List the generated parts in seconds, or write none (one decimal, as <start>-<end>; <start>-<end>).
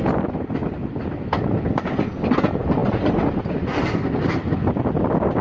none